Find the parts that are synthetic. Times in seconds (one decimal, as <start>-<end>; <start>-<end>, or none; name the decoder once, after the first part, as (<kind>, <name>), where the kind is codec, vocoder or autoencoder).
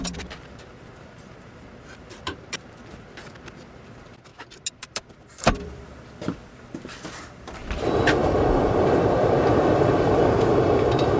0.0-4.3 (vocoder, BigVGAN v2); 4.8-11.2